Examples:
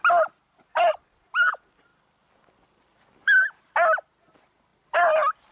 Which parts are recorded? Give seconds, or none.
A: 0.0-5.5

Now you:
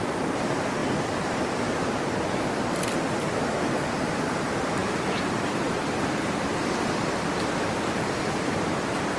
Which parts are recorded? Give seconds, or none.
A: 0.0-9.2

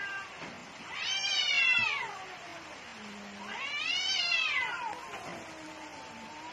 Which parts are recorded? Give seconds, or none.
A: 0.0-6.5

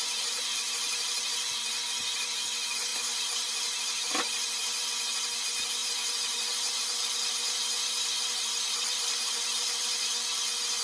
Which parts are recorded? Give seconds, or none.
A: 0.0-2.9; 4.1-5.8; 10.0-10.8

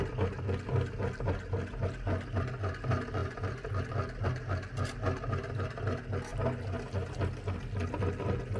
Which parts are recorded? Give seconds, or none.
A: 0.0-3.2; 3.9-8.6